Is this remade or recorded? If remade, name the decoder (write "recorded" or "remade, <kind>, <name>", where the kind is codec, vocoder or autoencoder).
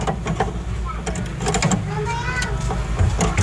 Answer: recorded